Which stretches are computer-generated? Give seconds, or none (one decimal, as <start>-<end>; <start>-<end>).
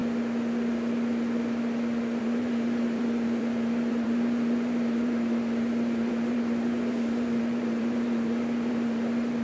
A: 2.2-9.4